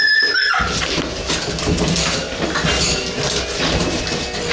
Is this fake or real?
real